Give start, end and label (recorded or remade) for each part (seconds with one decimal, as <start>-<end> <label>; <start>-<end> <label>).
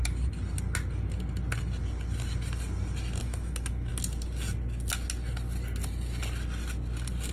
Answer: 0.0-3.2 recorded; 3.2-3.9 remade; 3.9-7.3 recorded